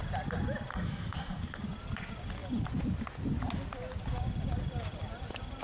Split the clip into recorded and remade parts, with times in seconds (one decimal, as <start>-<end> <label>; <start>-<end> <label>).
0.0-0.7 recorded; 0.7-1.6 remade; 1.6-5.6 recorded